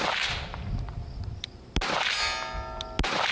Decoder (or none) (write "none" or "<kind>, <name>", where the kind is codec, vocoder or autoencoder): none